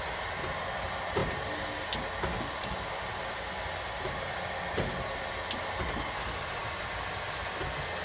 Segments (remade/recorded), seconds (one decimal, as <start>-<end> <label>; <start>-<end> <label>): 0.0-8.0 recorded